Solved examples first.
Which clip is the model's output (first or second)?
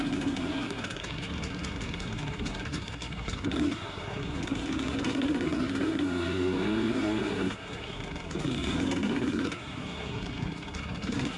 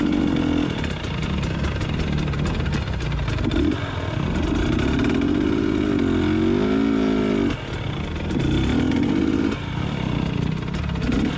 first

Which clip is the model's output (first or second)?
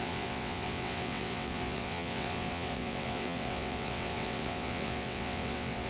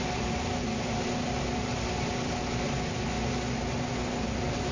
first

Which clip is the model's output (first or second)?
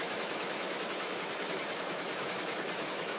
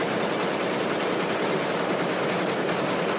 first